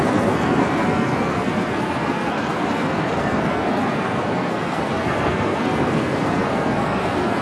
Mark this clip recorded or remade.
remade